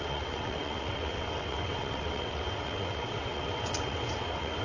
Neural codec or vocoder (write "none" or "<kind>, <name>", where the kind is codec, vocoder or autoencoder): vocoder, WaveNeXt